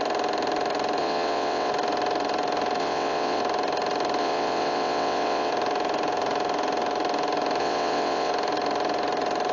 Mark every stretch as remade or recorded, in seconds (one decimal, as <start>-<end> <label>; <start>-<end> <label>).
0.0-1.0 recorded; 1.0-1.7 remade; 1.7-2.8 recorded; 2.8-3.4 remade; 3.4-4.2 recorded; 4.2-5.5 remade; 5.5-7.6 recorded; 7.6-8.3 remade; 8.3-9.5 recorded